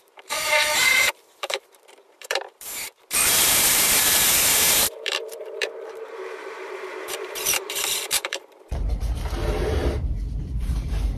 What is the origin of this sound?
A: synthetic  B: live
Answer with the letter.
A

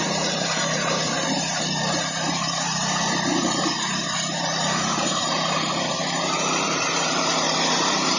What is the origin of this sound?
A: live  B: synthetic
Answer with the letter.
B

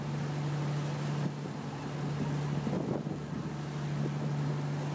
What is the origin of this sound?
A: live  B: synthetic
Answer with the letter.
A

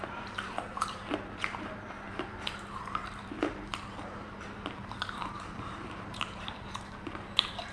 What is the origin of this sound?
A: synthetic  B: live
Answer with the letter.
A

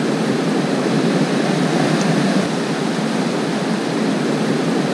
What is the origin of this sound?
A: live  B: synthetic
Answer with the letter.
B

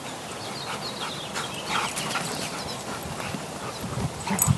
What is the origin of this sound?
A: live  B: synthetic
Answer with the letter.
A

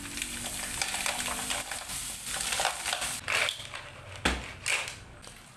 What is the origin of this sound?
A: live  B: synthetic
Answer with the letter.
A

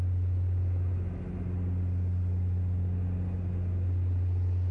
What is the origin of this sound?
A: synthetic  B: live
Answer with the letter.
B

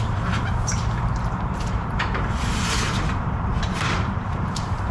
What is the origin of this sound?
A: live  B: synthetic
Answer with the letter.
B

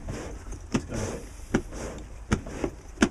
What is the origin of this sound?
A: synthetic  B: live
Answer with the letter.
B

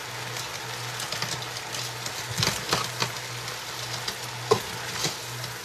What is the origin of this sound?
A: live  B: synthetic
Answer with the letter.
A